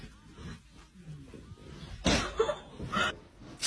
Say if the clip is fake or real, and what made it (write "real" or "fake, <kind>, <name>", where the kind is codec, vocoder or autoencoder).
real